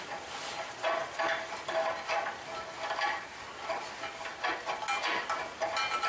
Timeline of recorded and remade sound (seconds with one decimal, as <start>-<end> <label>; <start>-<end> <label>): 0.0-6.1 recorded

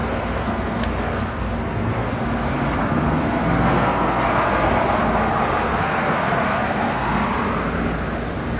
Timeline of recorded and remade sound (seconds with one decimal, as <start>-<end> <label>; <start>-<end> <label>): 0.0-2.1 remade; 2.1-2.8 recorded; 2.8-4.8 remade; 4.8-5.7 recorded; 5.7-7.3 remade; 7.3-8.6 recorded

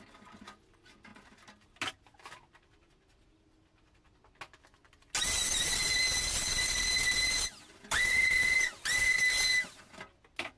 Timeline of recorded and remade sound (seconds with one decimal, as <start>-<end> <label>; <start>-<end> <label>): 0.0-10.6 recorded